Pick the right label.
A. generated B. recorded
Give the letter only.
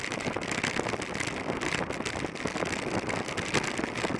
B